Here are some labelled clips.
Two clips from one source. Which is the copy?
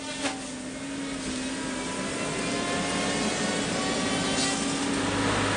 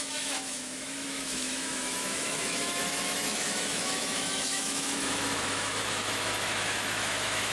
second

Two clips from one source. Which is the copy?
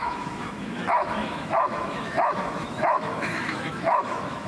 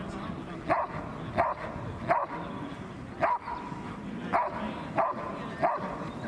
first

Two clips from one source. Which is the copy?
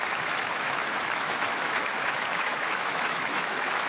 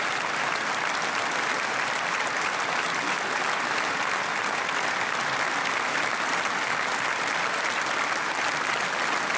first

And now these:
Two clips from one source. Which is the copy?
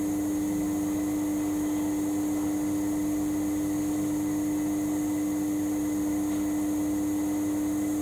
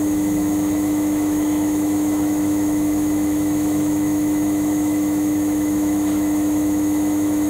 second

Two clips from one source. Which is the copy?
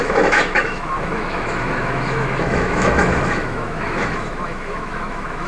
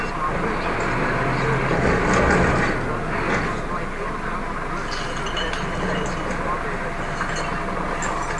first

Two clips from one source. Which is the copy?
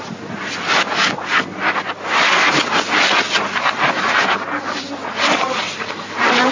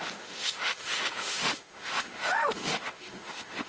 second